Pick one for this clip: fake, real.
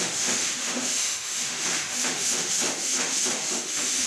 fake